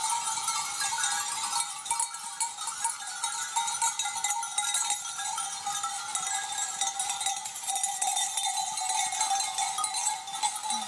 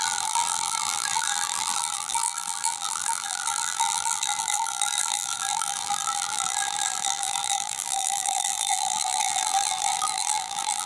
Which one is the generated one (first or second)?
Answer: second